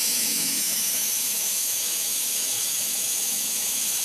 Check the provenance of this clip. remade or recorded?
remade